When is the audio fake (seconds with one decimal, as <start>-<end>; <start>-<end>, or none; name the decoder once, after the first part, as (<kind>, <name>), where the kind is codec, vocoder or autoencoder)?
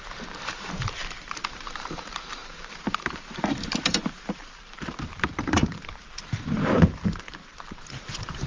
0.0-8.5 (vocoder, BigVGAN v2)